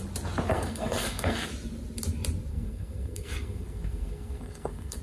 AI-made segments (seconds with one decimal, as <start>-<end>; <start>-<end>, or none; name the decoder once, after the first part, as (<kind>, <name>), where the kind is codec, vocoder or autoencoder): 0.5-1.5 (codec, SNAC); 2.5-5.0